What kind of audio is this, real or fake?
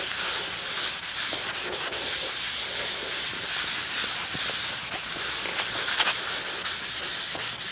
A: real